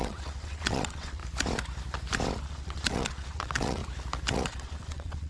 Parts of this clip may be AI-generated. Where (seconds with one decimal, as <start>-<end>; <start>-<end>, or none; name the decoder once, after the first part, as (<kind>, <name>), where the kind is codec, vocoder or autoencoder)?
0.0-1.2 (vocoder, WaveNeXt); 2.4-3.8; 4.3-5.3